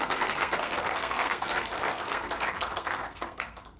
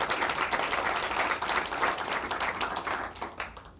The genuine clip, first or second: second